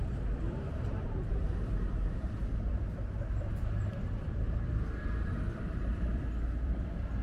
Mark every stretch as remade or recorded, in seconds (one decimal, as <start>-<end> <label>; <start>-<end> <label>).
0.0-7.2 remade